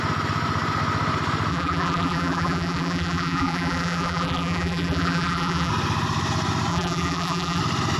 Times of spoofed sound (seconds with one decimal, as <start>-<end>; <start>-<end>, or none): 1.5-5.7; 6.7-7.6